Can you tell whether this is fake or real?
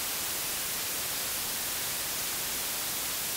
real